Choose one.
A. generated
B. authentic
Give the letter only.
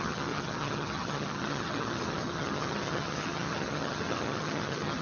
A